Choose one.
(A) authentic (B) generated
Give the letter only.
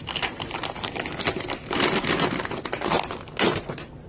A